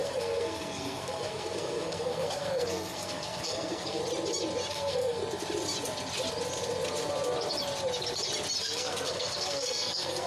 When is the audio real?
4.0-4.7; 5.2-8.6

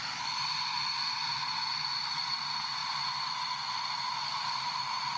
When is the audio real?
0.0-5.2